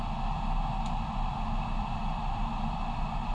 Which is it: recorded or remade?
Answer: recorded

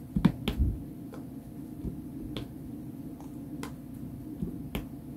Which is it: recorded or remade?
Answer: recorded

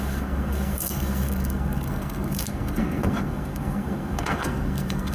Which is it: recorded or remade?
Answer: remade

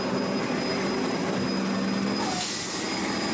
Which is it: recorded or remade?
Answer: recorded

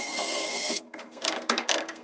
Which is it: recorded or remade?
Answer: remade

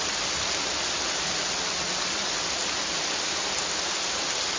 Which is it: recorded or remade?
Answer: recorded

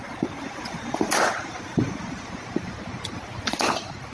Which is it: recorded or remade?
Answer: recorded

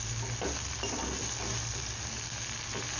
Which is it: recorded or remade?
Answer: recorded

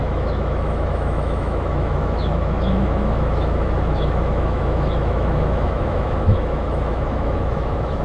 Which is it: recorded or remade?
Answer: remade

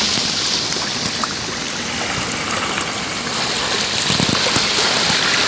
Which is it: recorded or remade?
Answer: recorded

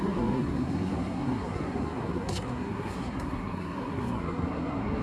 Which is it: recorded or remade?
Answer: remade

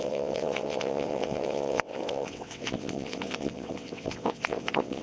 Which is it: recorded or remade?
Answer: remade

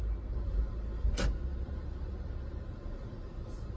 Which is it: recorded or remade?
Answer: recorded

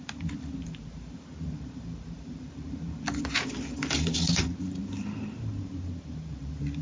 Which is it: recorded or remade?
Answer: remade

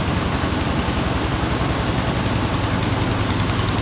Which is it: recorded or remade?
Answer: recorded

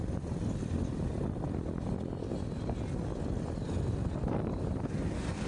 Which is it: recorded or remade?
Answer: recorded